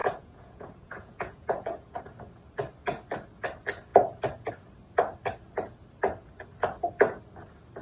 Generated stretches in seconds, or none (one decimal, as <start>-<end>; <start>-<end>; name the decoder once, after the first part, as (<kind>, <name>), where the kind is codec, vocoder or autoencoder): 0.0-2.0 (vocoder, Vocos)